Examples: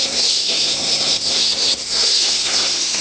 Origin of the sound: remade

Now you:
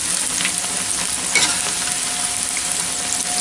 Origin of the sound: recorded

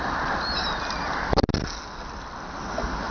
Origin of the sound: recorded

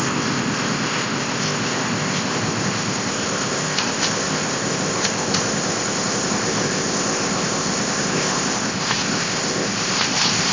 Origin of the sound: remade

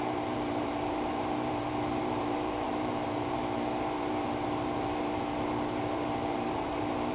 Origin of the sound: remade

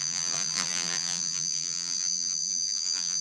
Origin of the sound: remade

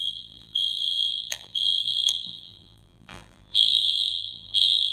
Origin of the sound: remade